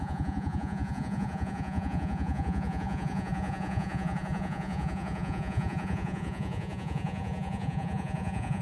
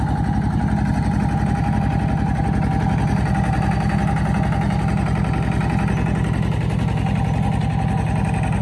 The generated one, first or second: first